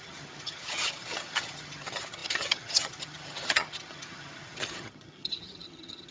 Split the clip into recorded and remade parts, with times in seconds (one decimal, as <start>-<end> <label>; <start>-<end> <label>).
0.0-6.1 remade